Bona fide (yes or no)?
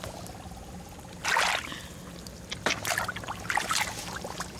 yes